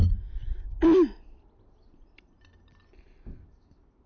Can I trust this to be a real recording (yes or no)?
yes